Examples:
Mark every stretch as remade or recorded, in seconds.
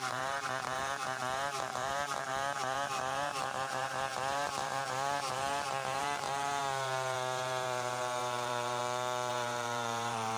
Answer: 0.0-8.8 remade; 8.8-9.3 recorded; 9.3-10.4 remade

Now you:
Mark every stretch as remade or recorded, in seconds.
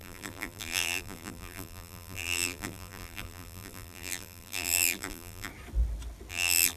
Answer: 0.0-5.5 remade; 5.5-6.3 recorded; 6.3-6.8 remade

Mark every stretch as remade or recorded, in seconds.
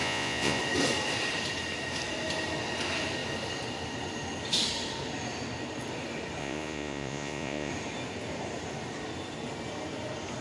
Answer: 0.0-0.6 remade; 0.6-6.4 recorded; 6.4-7.7 remade; 7.7-10.4 recorded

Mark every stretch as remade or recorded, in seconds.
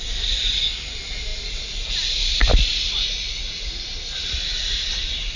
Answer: 0.0-5.4 recorded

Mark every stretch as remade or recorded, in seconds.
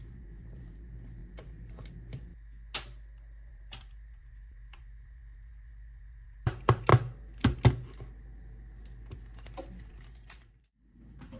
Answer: 0.0-2.3 remade; 2.3-3.5 recorded; 3.5-6.9 remade; 6.9-9.8 recorded; 9.8-11.4 remade